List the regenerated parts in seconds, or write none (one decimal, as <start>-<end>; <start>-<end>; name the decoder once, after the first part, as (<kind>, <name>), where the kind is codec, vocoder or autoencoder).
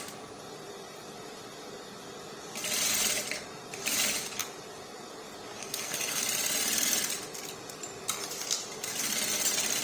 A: 5.6-6.2 (codec, SNAC)